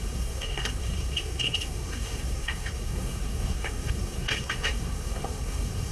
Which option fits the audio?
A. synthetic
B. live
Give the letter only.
A